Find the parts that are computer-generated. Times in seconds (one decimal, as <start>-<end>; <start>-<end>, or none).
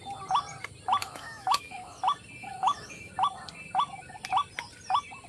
1.0-2.0; 2.4-3.1